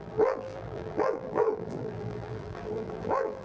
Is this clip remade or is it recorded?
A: remade